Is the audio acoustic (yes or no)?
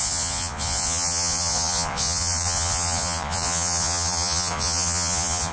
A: no